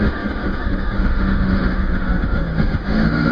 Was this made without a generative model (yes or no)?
no